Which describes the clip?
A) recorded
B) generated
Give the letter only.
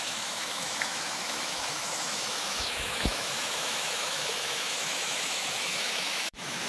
B